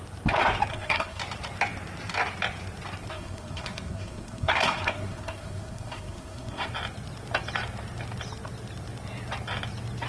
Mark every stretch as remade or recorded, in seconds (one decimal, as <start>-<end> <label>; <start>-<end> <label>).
0.0-0.7 recorded; 0.7-1.2 remade; 1.2-3.1 recorded; 3.1-6.7 remade; 6.7-10.1 recorded